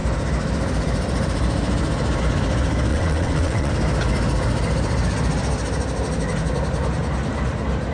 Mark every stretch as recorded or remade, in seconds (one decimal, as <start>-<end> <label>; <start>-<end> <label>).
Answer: 0.0-2.9 recorded; 2.9-3.7 remade; 3.7-7.9 recorded

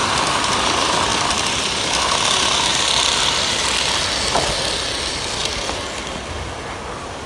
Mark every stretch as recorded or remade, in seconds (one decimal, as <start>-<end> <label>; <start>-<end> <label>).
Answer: 0.0-7.3 recorded

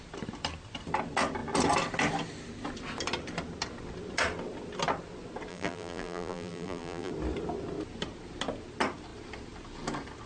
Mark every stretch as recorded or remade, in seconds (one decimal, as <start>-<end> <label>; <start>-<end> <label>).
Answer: 0.0-5.5 recorded; 5.5-7.1 remade; 7.1-10.3 recorded

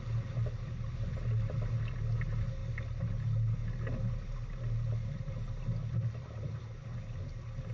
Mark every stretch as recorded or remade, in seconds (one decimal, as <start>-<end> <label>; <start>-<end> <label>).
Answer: 0.0-7.7 recorded

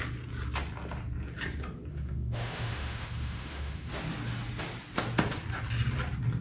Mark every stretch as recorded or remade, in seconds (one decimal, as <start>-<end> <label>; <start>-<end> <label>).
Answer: 0.0-1.9 recorded; 1.9-3.9 remade; 3.9-6.4 recorded